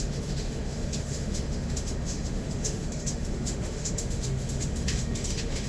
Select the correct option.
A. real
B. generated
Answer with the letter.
B